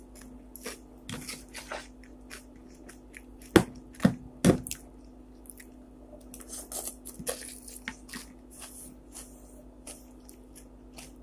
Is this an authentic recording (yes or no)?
yes